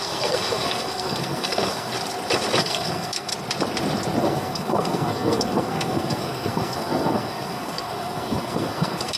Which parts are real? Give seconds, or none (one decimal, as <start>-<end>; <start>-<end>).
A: 1.9-2.6; 3.3-4.2